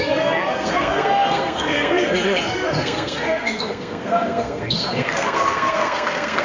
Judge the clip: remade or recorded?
remade